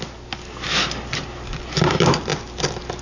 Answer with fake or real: real